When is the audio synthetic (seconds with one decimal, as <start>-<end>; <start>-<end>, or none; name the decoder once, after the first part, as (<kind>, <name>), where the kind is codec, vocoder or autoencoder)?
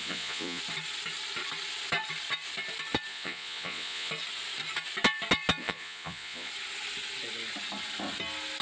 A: 0.0-0.6 (vocoder, Vocos); 3.1-4.1; 5.6-6.5